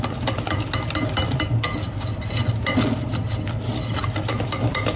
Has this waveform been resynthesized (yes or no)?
no